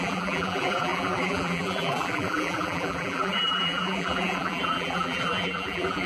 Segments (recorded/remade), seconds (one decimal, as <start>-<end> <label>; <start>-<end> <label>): 0.0-6.1 remade